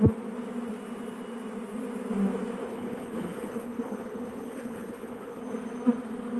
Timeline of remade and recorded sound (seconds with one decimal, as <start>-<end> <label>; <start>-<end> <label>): 0.0-2.6 recorded; 2.6-5.4 remade; 5.4-6.4 recorded